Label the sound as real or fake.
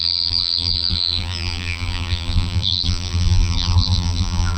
fake